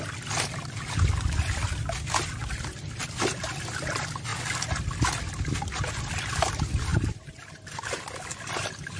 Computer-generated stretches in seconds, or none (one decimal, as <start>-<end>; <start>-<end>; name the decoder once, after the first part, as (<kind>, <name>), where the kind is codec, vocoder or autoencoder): 0.0-4.3 (vocoder, BigVGAN v2); 6.5-9.0

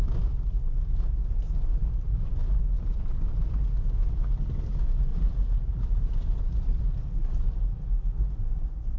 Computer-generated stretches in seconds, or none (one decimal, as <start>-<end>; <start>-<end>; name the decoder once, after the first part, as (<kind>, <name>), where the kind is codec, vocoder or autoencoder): 5.1-6.8 (vocoder, BigVGAN v2)

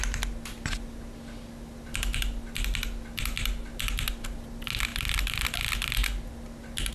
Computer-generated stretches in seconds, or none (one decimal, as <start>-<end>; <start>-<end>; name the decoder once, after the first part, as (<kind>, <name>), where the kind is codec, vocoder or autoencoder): none

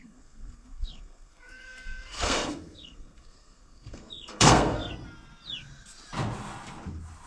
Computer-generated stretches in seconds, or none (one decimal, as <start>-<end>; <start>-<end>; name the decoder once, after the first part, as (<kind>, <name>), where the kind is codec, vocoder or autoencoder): 0.0-4.9 (codec, SNAC)

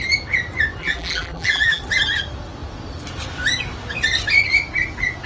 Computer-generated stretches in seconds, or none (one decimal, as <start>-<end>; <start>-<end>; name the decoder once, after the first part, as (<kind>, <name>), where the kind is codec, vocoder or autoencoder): 0.8-1.8 (vocoder, BigVGAN v2)